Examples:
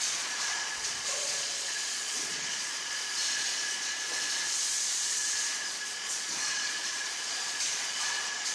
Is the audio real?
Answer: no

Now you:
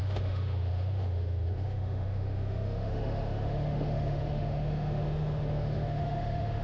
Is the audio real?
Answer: no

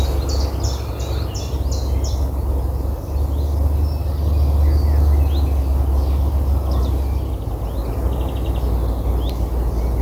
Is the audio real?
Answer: yes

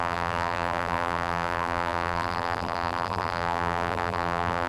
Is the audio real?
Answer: no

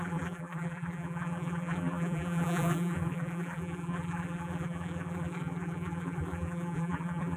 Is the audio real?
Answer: no